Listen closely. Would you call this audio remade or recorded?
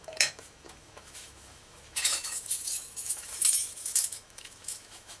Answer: remade